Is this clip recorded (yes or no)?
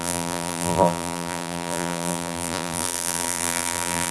no